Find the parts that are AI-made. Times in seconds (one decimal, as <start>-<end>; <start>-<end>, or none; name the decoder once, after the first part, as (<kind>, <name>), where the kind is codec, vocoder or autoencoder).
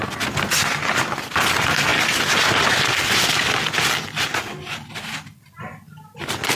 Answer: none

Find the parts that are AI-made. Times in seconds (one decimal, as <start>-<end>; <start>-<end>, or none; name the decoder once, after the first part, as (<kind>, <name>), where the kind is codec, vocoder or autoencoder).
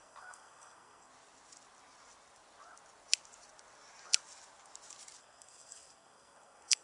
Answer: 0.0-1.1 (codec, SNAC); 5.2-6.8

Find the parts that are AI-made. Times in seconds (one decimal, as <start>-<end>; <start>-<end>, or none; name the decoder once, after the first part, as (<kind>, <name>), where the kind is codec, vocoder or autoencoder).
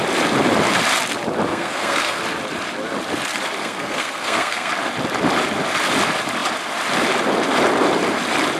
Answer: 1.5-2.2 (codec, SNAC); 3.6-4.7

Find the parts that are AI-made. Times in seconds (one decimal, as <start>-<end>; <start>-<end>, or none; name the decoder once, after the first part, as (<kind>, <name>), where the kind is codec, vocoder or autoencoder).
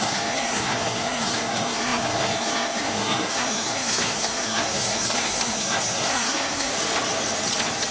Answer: 0.0-6.7 (codec, SNAC)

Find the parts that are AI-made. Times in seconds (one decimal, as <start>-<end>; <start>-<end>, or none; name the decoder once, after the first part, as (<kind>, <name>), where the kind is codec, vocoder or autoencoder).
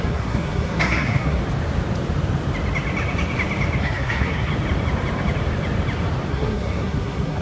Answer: 0.0-1.4 (codec, SNAC); 3.8-4.5; 6.3-7.4